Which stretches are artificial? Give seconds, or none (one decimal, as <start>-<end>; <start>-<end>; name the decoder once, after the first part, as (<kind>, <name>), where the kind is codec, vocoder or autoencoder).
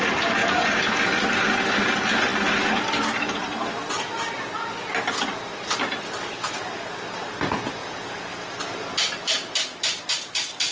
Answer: 7.8-8.3 (vocoder, Vocos)